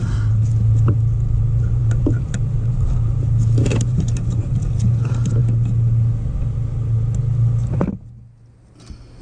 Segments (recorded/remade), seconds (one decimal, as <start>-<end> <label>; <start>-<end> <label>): 0.0-1.8 recorded; 1.8-4.5 remade; 4.5-9.2 recorded